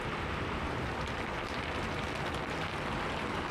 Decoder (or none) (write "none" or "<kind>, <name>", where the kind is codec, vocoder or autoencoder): none